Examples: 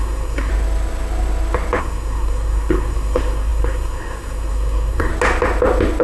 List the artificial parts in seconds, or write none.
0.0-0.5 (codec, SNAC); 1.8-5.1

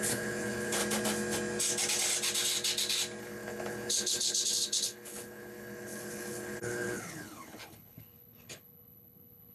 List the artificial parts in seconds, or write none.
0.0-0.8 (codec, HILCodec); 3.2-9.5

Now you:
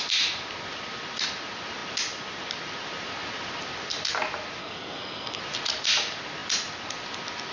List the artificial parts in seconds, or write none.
4.6-5.4 (codec, SNAC)